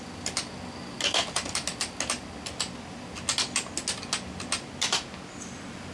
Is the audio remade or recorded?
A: recorded